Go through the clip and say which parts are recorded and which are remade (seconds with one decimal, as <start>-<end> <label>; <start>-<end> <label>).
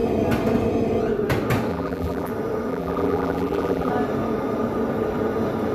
0.0-1.7 recorded; 1.7-2.3 remade; 2.3-2.7 recorded; 2.7-3.9 remade; 3.9-5.7 recorded